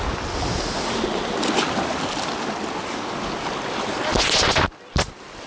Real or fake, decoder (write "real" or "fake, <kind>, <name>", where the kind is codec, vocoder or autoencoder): real